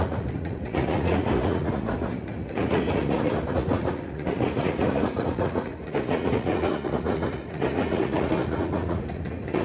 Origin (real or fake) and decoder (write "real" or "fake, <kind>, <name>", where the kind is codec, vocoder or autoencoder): fake, vocoder, Vocos